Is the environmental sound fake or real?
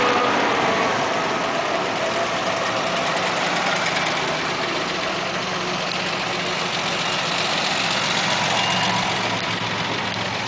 real